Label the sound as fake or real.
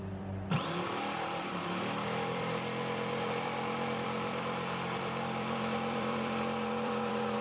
fake